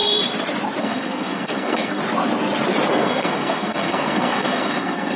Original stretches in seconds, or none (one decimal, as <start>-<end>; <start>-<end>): 0.0-0.8; 2.0-2.9

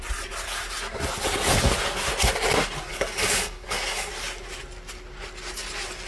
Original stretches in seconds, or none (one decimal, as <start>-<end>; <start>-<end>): 0.0-2.9; 4.1-6.1

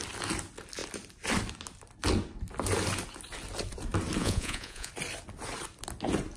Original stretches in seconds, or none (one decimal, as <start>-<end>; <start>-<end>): 0.0-4.2; 4.9-6.4

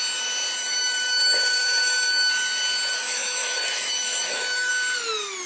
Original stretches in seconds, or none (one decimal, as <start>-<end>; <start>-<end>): 0.0-0.6; 2.3-2.9; 4.7-5.5

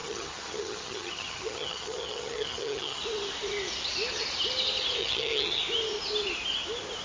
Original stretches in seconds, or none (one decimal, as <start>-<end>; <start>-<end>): 3.0-5.0; 5.6-7.0